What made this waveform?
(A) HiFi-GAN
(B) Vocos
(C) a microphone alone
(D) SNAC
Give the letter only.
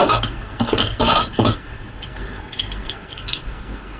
D